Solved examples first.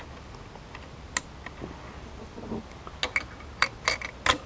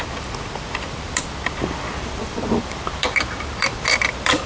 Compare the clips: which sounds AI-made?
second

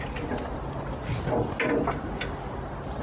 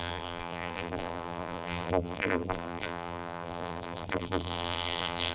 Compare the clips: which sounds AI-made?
second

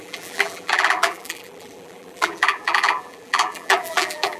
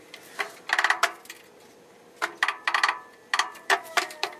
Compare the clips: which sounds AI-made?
first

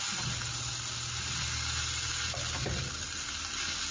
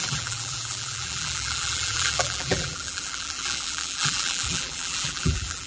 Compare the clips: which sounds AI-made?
second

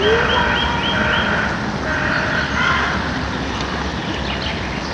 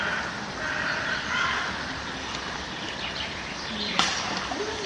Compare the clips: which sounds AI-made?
second